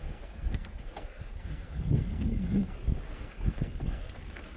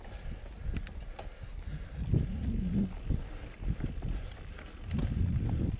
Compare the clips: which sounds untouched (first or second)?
second